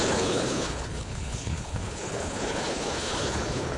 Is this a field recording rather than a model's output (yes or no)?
no